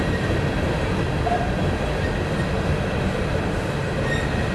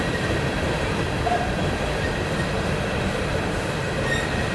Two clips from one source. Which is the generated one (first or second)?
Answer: second